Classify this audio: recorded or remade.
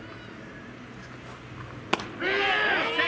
recorded